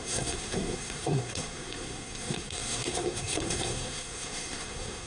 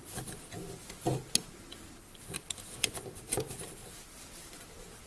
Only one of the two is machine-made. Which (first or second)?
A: first